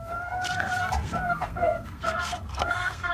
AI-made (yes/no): yes